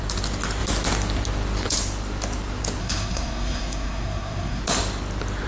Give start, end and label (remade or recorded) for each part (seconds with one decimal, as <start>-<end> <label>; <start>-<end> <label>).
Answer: 0.0-2.8 recorded; 2.8-4.6 remade; 4.6-5.5 recorded